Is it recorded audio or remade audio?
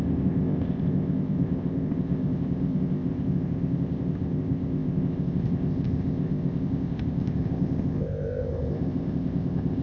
remade